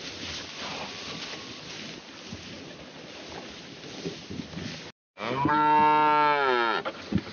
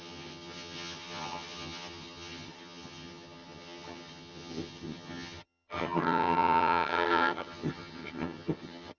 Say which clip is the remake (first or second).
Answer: second